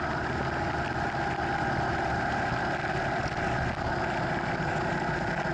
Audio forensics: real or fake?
real